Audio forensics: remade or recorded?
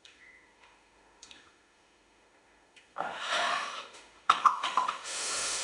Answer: remade